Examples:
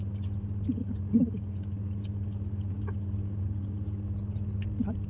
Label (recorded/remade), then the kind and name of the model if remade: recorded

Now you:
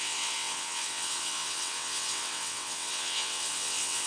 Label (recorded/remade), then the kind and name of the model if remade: remade, vocoder, WaveNeXt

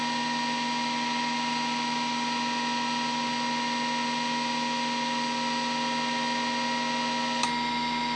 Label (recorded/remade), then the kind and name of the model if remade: recorded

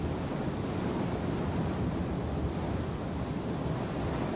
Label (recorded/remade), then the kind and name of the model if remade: recorded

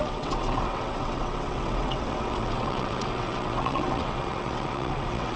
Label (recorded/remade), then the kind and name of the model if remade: remade, vocoder, WaveNeXt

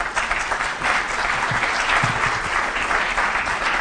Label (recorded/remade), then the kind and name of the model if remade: recorded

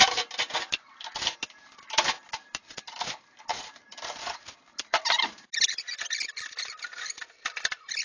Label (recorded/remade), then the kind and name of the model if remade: recorded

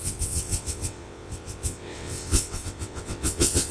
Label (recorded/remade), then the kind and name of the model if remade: remade, vocoder, WaveNeXt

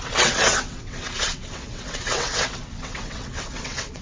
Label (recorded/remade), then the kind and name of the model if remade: remade, vocoder, WaveNeXt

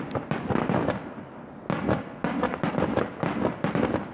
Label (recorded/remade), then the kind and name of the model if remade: recorded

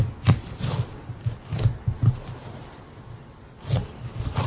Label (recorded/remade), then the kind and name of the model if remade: recorded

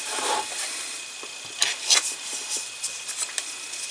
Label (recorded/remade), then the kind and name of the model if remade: recorded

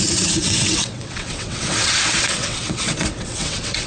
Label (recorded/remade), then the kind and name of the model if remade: remade, vocoder, WaveNeXt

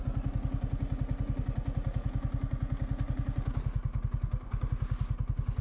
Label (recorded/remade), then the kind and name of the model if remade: recorded